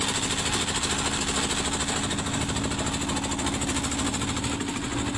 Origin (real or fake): real